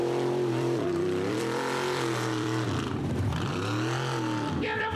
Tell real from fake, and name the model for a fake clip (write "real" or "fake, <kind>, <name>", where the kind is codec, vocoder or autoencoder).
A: fake, vocoder, BigVGAN v2